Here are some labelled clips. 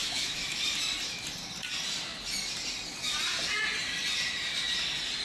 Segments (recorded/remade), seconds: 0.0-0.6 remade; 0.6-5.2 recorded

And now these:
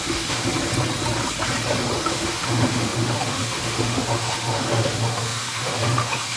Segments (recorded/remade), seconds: 0.0-0.5 remade; 0.5-2.0 recorded; 2.0-6.4 remade